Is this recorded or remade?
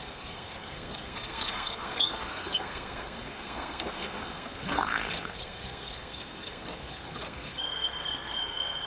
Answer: remade